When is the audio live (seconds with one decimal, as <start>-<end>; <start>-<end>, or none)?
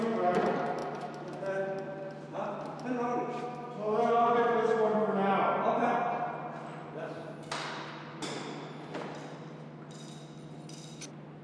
0.0-11.4